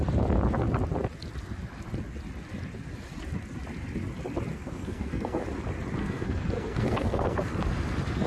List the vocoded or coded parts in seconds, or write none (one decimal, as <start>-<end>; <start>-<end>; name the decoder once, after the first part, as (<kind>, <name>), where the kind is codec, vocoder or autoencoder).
4.5-5.4 (codec, SNAC); 6.0-7.5